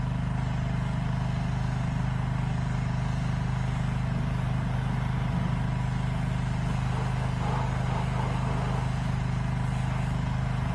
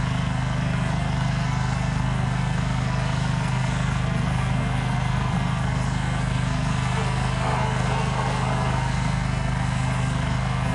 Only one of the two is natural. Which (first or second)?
first